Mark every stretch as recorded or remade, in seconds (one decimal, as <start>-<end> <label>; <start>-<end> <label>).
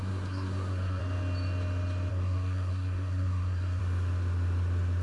0.0-1.0 remade; 1.0-2.1 recorded; 2.1-3.8 remade; 3.8-5.0 recorded